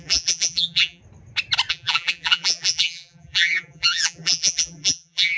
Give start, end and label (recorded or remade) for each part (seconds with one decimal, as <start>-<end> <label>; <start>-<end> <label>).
0.0-1.0 remade; 1.0-1.7 recorded; 1.7-5.4 remade